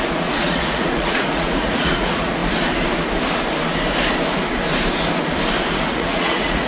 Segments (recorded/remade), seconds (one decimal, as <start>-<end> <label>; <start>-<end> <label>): 0.0-2.4 remade; 2.4-5.9 recorded; 5.9-6.7 remade